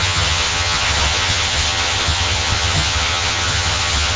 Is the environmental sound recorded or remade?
remade